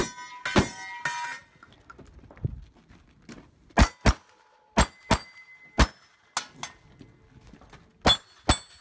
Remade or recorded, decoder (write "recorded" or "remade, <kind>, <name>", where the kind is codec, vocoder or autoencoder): recorded